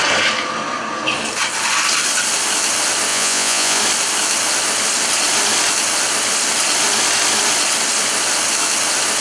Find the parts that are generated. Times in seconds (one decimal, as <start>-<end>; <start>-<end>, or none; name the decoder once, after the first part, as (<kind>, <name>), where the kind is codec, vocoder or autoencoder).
3.1-3.8 (vocoder, Vocos)